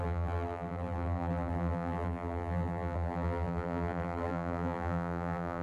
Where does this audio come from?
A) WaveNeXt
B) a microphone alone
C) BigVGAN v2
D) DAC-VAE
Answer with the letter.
C